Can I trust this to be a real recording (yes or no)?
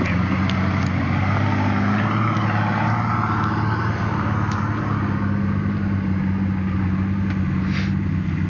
yes